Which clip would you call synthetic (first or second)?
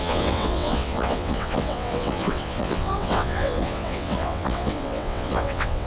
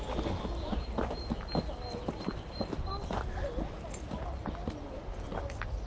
first